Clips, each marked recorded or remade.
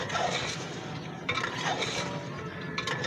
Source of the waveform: recorded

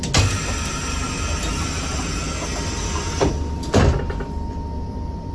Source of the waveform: recorded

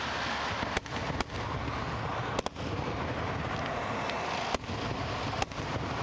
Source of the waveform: recorded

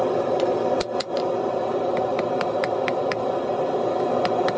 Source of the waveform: recorded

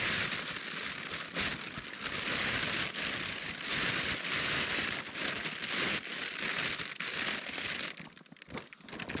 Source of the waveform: recorded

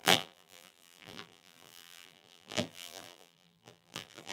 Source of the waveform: remade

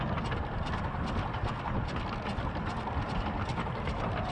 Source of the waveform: recorded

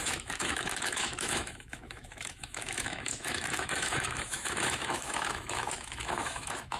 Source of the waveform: remade